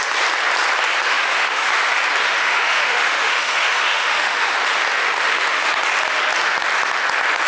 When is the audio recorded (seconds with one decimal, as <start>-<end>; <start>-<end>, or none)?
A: 0.0-1.1; 1.7-2.2; 4.6-5.0; 5.7-7.5